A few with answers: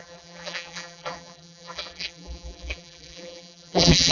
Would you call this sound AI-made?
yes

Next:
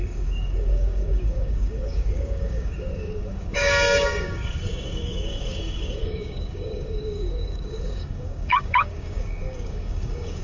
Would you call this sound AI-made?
yes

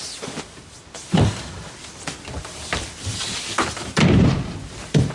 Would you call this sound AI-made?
yes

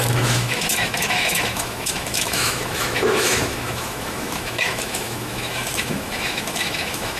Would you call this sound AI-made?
yes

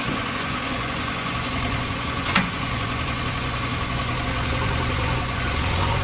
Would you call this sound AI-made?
yes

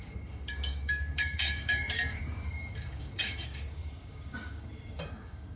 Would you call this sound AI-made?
yes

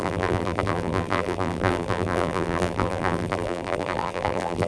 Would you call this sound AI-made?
yes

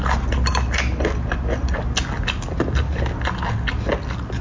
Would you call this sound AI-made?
no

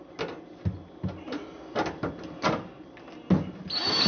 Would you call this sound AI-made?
no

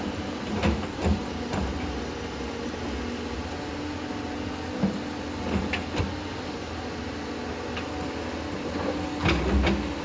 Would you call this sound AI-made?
no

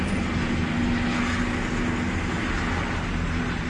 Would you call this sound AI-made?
no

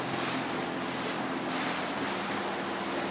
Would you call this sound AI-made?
no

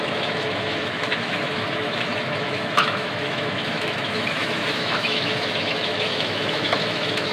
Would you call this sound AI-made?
yes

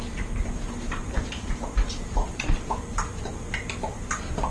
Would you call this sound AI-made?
yes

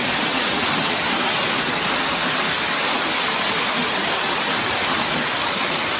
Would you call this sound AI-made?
no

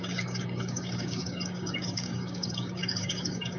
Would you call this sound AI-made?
yes